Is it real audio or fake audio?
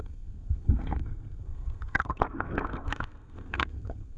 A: fake